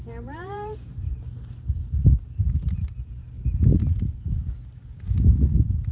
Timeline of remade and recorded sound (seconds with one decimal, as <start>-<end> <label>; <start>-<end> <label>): 0.0-1.1 remade; 1.1-2.5 recorded; 2.5-3.2 remade; 3.2-3.7 recorded; 3.7-4.8 remade; 4.8-5.9 recorded